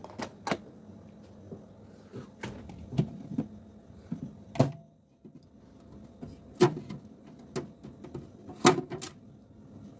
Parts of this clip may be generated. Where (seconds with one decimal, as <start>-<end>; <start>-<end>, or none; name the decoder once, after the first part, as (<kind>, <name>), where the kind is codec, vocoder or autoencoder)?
none

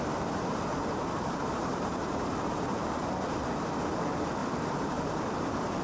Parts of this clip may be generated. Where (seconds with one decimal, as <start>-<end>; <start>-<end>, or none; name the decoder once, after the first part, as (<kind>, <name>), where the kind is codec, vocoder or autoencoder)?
0.0-3.1 (vocoder, BigVGAN v2); 4.4-5.8

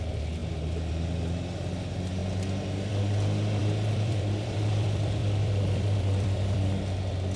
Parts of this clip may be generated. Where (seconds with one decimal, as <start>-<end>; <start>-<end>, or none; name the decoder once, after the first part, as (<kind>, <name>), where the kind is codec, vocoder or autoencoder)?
3.6-7.4 (vocoder, BigVGAN v2)

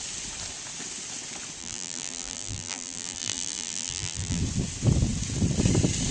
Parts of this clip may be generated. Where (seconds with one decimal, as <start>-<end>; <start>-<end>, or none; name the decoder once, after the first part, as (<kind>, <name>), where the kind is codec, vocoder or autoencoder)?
1.6-4.4 (vocoder, BigVGAN v2)

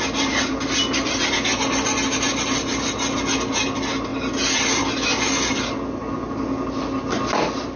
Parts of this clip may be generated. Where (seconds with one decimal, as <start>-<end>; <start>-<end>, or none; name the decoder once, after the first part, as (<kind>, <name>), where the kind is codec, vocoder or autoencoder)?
none

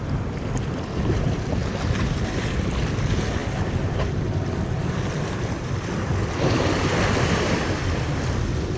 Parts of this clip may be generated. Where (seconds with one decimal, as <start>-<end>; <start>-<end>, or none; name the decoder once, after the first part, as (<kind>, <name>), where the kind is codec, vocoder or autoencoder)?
none

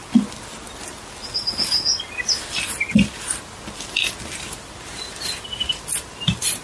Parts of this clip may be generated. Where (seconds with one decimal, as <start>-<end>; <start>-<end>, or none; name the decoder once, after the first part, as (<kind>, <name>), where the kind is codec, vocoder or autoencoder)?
none

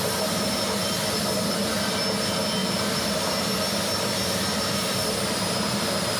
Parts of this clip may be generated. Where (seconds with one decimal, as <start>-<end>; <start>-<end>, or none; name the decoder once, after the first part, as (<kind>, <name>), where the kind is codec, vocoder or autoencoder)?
2.6-6.2 (vocoder, BigVGAN v2)